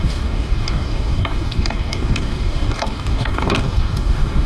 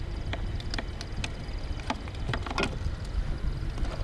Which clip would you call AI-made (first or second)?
first